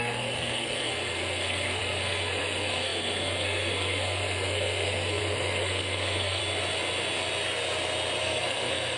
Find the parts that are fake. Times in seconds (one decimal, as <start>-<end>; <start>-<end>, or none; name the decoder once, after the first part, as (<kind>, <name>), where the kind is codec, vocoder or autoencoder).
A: 0.0-6.4 (codec, SNAC); 8.2-9.0